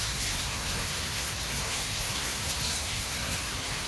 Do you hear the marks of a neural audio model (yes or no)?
yes